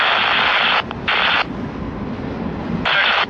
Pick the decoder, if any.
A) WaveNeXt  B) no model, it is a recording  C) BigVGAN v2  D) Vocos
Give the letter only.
B